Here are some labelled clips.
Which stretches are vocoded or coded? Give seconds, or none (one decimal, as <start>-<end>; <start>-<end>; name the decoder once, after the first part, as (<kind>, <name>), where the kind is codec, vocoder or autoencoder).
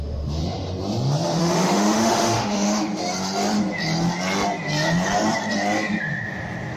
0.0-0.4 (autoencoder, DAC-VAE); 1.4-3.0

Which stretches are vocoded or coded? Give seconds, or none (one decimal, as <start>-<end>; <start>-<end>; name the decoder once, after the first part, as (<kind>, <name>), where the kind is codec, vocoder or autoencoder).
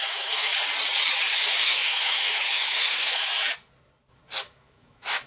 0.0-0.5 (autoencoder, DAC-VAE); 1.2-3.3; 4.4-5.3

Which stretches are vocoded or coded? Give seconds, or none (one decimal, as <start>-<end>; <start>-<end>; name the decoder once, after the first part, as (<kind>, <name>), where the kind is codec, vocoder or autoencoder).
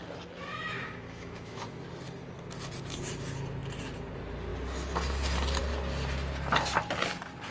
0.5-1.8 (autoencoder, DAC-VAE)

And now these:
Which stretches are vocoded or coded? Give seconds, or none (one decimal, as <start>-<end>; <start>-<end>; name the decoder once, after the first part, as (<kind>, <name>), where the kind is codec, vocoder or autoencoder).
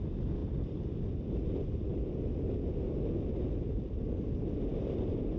none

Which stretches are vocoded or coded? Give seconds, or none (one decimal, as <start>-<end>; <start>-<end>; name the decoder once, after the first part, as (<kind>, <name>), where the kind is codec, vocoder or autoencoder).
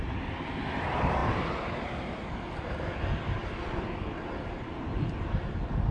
none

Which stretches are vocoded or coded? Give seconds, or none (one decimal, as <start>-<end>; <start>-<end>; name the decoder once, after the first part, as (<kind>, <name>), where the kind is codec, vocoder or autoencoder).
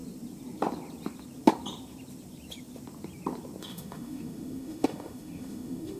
3.6-6.0 (autoencoder, DAC-VAE)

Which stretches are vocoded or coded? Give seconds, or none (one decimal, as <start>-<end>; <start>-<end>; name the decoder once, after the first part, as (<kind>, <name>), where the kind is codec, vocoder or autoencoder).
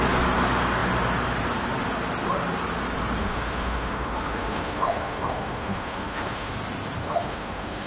3.2-6.5 (autoencoder, DAC-VAE); 7.0-7.9